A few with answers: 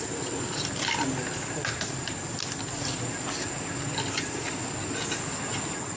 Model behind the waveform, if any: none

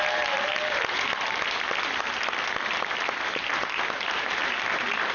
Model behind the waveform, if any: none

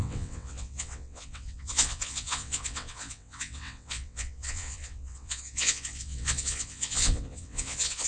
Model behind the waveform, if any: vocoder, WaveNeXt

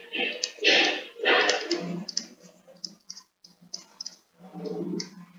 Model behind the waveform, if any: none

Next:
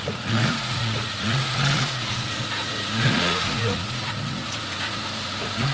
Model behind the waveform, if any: vocoder, Vocos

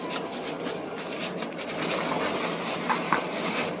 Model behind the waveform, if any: none